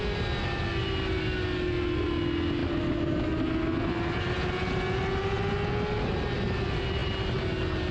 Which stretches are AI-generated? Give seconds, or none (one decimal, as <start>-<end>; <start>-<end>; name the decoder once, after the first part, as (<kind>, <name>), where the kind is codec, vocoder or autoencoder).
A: none